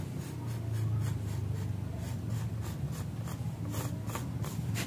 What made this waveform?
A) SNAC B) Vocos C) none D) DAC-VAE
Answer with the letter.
C